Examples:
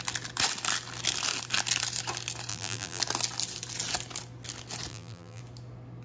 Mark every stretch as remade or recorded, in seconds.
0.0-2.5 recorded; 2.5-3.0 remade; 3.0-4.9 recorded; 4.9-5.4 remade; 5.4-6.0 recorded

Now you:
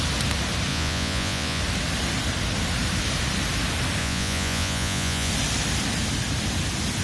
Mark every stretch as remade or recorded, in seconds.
0.0-0.7 recorded; 0.7-1.6 remade; 1.6-4.0 recorded; 4.0-5.3 remade; 5.3-7.0 recorded

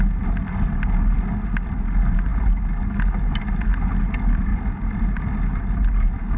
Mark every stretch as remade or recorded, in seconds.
0.0-6.4 recorded

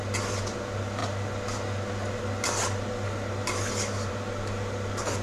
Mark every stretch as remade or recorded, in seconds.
0.0-5.2 recorded

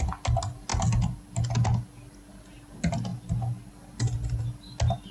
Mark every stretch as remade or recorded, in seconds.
0.0-5.1 recorded

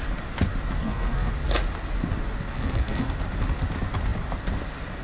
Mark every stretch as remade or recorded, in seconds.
0.0-0.8 recorded; 0.8-1.3 remade; 1.3-2.5 recorded; 2.5-3.1 remade; 3.1-5.0 recorded

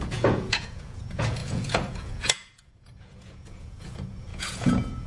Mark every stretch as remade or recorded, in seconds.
0.0-5.1 remade

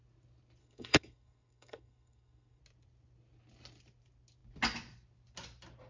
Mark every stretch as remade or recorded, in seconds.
0.0-0.6 recorded; 0.6-2.6 remade; 2.6-5.9 recorded